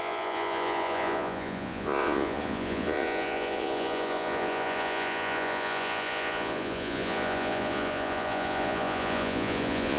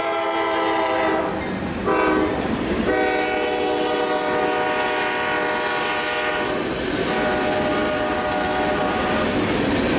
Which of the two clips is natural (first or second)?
second